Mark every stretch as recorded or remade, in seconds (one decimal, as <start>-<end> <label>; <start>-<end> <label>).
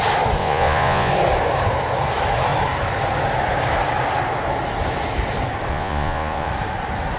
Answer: 0.0-0.4 recorded; 0.4-1.1 remade; 1.1-5.7 recorded; 5.7-6.5 remade; 6.5-7.2 recorded